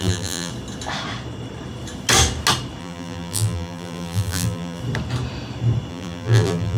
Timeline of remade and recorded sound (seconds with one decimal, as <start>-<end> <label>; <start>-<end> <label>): 0.0-0.5 remade; 0.5-2.8 recorded; 2.8-4.8 remade; 4.8-5.9 recorded; 5.9-6.8 remade